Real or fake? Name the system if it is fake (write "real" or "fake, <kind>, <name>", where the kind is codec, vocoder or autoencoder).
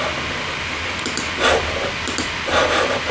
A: real